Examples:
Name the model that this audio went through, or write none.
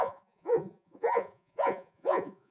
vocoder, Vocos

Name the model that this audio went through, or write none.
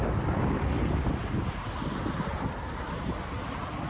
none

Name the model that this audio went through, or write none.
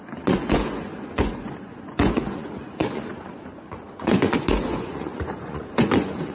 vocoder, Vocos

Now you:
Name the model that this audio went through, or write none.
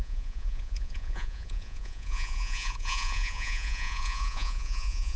vocoder, Vocos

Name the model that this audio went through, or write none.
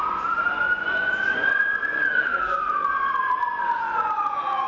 vocoder, Vocos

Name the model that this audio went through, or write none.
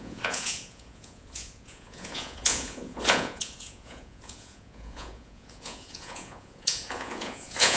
vocoder, Vocos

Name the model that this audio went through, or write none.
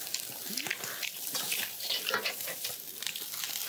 none